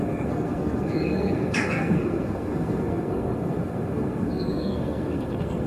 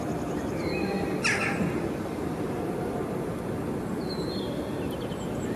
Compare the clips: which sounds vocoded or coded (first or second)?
first